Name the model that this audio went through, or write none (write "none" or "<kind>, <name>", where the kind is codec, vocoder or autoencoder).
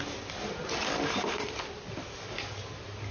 none